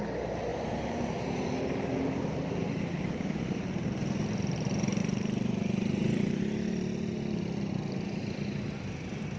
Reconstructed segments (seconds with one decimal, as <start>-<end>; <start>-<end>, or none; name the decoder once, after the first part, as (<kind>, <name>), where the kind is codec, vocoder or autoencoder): 0.5-3.6 (vocoder, BigVGAN v2); 5.0-6.4